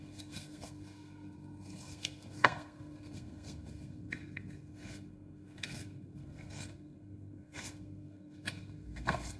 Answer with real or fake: fake